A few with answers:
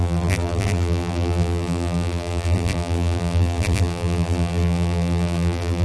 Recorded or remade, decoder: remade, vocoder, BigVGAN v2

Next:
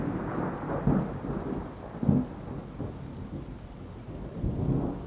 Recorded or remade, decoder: recorded